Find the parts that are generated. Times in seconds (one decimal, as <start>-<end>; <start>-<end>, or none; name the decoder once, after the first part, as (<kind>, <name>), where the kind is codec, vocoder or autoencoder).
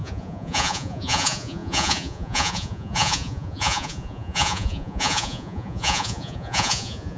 0.0-7.2 (vocoder, Vocos)